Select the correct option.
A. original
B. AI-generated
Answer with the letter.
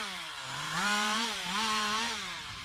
B